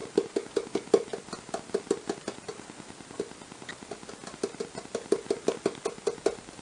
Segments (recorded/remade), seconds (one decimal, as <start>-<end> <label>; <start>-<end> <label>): 0.0-6.6 recorded